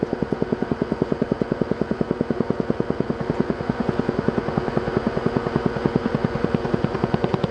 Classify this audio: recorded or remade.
remade